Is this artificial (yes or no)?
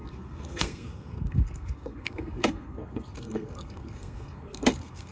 yes